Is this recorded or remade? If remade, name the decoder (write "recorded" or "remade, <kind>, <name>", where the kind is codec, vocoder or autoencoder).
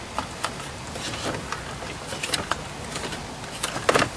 recorded